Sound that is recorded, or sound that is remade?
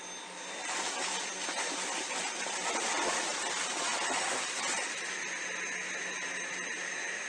recorded